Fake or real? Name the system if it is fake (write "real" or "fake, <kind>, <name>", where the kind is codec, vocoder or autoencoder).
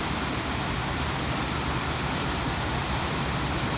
real